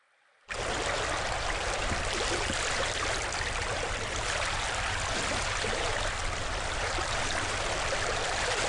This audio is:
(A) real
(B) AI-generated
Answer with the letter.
A